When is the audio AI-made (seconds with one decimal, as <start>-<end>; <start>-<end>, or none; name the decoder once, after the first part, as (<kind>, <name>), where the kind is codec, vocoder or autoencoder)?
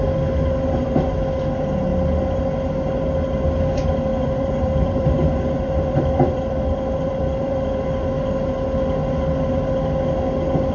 4.1-7.8 (vocoder, BigVGAN v2)